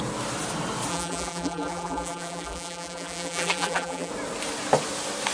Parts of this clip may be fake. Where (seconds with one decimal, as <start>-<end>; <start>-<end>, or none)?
0.9-4.1